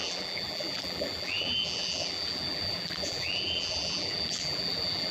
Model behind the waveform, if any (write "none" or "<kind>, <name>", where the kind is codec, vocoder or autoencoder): vocoder, BigVGAN v2